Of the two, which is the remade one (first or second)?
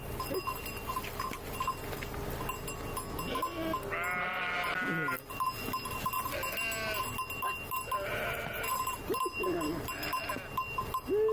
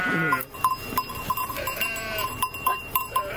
second